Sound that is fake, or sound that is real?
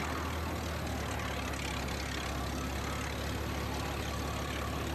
real